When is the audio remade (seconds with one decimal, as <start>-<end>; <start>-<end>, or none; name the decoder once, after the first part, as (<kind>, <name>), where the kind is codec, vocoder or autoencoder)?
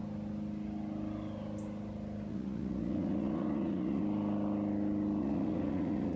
2.3-4.0 (vocoder, Vocos); 5.2-6.2